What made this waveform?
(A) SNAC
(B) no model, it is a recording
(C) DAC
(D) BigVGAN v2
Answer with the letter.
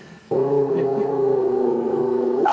A